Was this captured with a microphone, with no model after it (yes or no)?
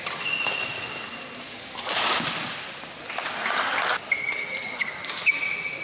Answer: yes